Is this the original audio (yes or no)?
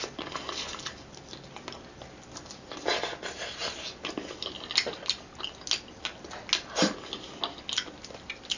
yes